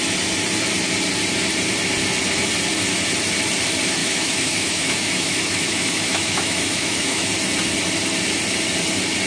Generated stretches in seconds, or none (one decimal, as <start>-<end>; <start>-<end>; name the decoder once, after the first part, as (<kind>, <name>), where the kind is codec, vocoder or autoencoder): 4.0-7.3 (autoencoder, DAC-VAE)